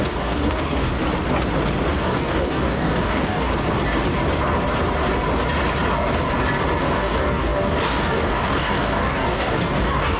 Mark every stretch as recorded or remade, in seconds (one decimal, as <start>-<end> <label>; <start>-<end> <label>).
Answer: 0.0-0.9 remade; 0.9-2.0 recorded; 2.0-3.5 remade; 3.5-6.8 recorded; 6.8-10.2 remade